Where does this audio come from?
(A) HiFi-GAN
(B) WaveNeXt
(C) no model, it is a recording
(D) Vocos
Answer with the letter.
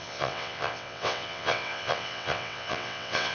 B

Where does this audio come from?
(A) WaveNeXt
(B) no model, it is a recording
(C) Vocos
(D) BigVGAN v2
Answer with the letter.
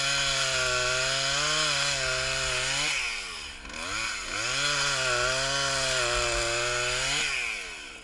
B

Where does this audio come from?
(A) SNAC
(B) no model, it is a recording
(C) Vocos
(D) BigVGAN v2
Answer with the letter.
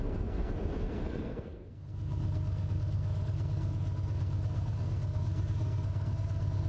A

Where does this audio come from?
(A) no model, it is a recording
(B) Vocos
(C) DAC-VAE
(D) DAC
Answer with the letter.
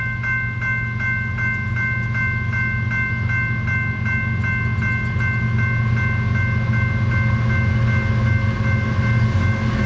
A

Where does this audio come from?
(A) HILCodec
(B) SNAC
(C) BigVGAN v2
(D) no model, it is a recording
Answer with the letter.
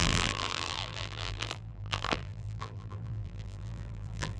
C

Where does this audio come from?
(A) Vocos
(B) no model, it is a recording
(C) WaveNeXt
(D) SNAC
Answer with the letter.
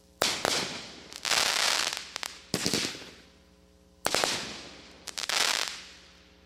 B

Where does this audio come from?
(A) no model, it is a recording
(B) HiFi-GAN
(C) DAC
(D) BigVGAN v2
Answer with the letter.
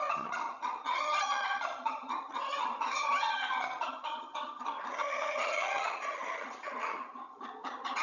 B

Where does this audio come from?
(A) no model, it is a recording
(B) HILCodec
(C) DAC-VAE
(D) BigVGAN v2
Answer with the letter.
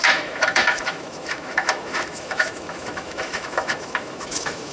C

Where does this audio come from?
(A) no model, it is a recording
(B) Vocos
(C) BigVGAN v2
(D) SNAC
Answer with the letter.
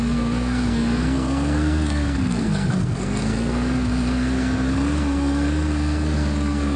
D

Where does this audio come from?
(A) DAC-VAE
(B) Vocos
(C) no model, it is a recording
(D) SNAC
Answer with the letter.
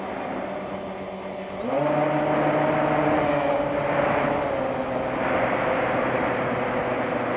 C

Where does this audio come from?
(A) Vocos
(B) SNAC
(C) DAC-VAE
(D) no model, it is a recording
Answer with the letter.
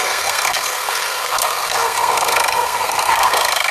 B